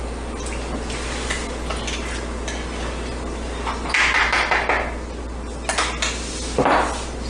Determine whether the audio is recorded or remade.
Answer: recorded